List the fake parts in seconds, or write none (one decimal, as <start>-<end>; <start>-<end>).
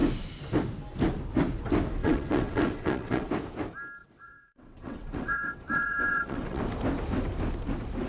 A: 2.0-3.3; 4.0-6.6